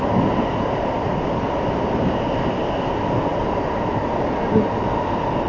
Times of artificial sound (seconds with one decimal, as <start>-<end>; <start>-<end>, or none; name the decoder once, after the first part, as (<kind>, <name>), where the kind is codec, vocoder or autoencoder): none